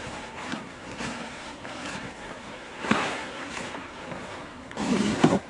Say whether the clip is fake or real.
fake